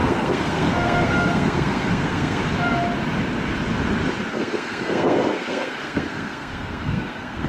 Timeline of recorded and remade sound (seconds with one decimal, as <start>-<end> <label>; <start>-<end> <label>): 0.0-2.4 remade; 2.4-4.3 recorded; 4.3-7.5 remade